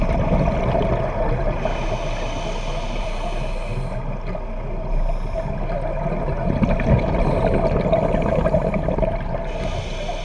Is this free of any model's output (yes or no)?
yes